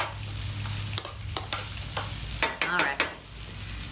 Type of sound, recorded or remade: recorded